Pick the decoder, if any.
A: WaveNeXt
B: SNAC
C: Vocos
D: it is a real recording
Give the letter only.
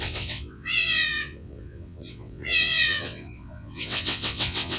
A